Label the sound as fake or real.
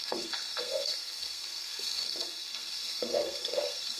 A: fake